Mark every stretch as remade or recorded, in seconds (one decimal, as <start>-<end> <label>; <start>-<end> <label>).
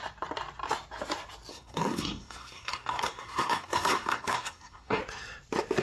0.0-1.5 recorded; 1.5-5.0 remade; 5.0-5.8 recorded